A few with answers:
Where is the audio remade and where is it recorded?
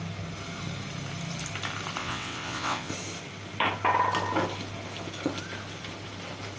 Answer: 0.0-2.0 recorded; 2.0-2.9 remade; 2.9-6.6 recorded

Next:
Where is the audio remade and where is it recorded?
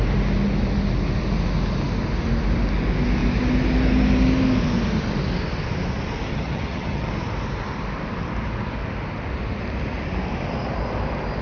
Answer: 0.0-6.3 recorded; 6.3-7.1 remade; 7.1-11.4 recorded